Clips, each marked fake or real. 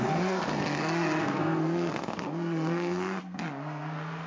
fake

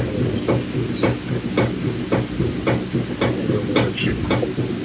real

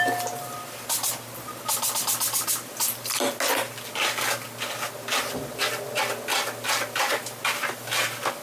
real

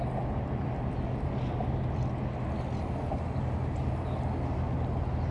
real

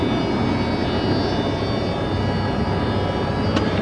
real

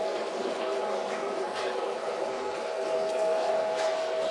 fake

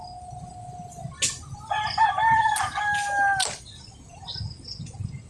real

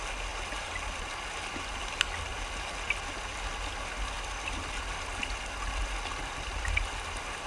real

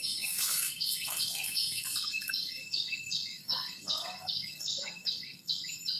fake